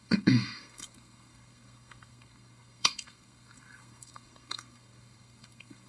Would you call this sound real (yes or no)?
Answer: no